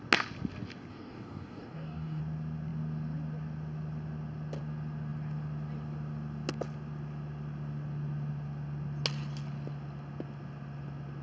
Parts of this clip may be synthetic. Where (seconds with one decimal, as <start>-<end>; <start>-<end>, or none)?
0.9-2.2